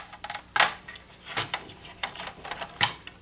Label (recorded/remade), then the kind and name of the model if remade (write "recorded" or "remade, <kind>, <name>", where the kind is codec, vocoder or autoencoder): recorded